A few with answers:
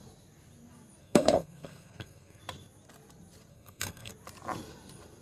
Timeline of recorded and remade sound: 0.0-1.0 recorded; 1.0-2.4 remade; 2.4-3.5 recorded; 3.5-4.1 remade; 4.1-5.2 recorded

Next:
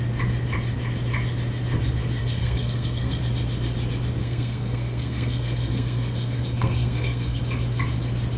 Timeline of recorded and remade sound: 0.0-2.2 recorded; 2.2-3.2 remade; 3.2-4.2 recorded; 4.2-7.4 remade; 7.4-8.4 recorded

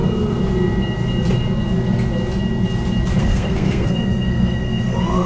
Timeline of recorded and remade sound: 0.0-3.2 recorded; 3.2-5.3 remade

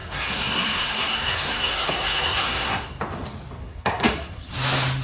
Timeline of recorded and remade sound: 0.0-2.9 remade; 2.9-3.6 recorded; 3.6-4.5 remade; 4.5-5.0 recorded